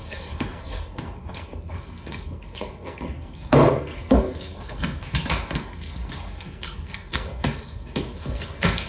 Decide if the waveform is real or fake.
fake